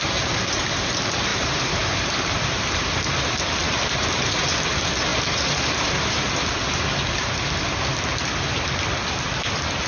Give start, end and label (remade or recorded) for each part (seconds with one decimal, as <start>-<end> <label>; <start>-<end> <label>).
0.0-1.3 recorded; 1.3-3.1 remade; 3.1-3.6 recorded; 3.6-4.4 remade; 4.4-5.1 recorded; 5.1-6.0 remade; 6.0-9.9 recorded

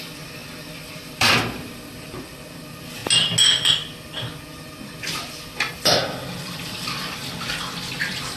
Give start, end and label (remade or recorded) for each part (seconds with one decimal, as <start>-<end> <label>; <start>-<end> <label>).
0.0-3.0 remade; 3.0-5.7 recorded; 5.7-8.4 remade

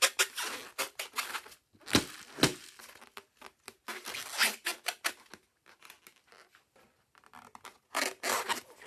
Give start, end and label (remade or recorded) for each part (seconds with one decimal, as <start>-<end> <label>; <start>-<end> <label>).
0.0-8.9 recorded

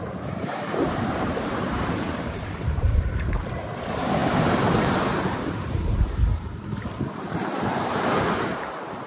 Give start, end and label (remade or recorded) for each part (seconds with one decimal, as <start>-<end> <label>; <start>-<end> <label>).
0.0-9.1 remade

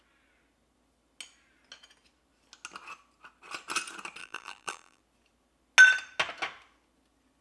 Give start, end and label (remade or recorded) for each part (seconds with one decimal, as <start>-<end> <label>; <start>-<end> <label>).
0.0-4.2 recorded; 4.2-5.0 remade; 5.0-7.4 recorded

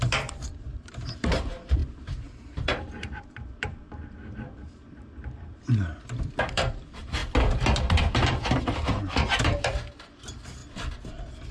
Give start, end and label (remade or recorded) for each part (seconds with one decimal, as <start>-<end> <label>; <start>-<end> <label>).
0.0-7.2 remade; 7.2-7.9 recorded; 7.9-10.6 remade; 10.6-11.5 recorded